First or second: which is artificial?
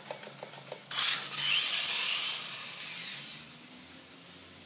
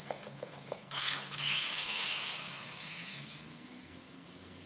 second